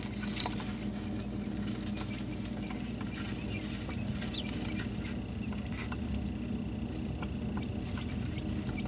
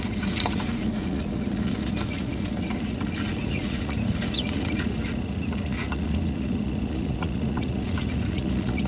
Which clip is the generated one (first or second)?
second